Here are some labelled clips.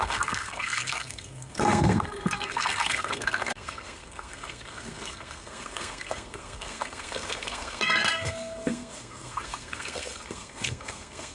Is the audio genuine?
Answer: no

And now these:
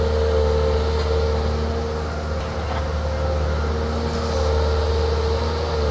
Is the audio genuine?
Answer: yes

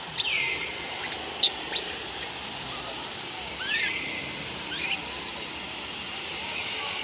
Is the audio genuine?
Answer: yes